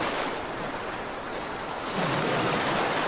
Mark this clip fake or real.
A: real